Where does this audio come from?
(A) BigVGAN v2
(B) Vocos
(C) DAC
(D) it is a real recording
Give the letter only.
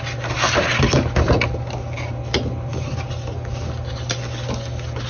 D